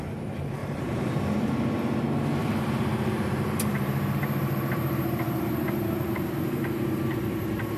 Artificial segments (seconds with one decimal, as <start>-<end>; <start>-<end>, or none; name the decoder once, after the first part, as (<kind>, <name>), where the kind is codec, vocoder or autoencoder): 0.6-1.5 (vocoder, BigVGAN v2); 2.4-7.0